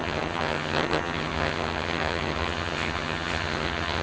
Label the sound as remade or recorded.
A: remade